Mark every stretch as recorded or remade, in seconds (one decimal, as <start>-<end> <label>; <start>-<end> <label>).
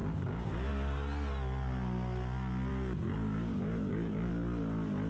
0.0-0.7 remade; 0.7-2.7 recorded; 2.7-4.3 remade; 4.3-5.1 recorded